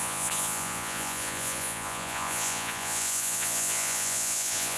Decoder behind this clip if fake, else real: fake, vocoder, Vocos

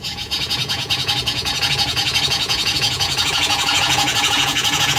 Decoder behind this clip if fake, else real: fake, vocoder, Vocos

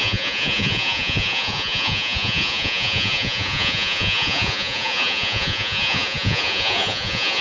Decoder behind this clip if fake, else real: fake, vocoder, Vocos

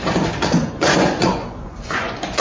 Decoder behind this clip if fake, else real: fake, vocoder, Vocos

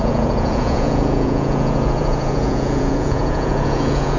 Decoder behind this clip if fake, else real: fake, vocoder, Vocos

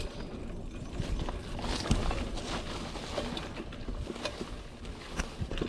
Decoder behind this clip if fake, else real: real